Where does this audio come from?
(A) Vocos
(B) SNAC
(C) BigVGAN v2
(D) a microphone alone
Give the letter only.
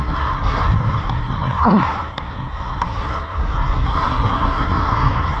B